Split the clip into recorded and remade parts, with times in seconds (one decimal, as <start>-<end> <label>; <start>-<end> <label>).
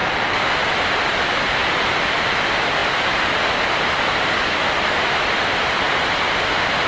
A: 0.0-6.9 recorded